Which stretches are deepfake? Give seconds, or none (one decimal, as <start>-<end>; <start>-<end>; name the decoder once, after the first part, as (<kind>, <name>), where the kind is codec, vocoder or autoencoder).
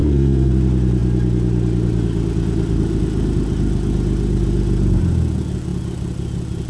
0.0-0.5 (codec, SNAC)